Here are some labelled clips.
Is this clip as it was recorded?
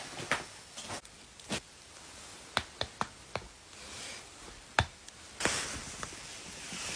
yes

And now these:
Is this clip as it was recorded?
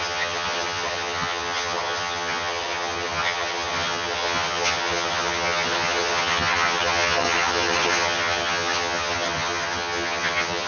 no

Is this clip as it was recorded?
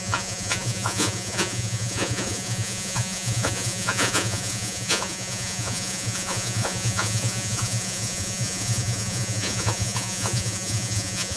no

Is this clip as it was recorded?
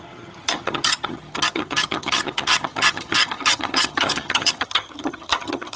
no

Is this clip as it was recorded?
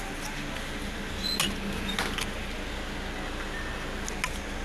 yes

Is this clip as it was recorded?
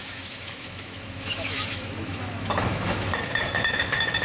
no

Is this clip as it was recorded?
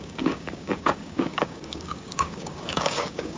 no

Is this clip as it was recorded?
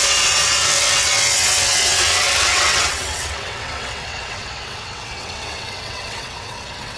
no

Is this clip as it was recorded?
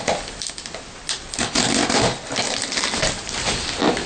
yes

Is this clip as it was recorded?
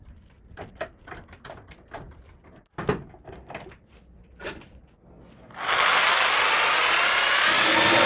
yes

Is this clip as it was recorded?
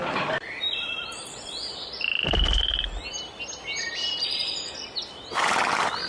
yes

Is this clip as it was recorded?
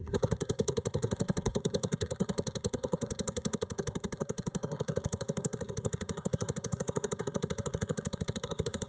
no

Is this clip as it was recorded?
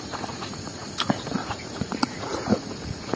no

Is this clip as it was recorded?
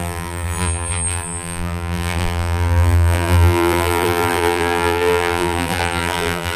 no